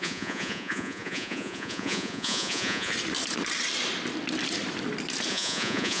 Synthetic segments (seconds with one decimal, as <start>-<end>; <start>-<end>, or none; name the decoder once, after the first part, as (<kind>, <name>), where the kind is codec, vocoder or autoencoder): 0.0-2.9 (vocoder, Vocos); 5.3-6.0